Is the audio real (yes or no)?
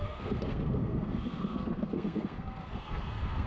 no